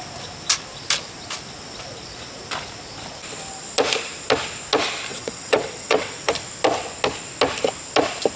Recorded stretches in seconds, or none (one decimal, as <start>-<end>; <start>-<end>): 0.0-5.1; 6.3-8.4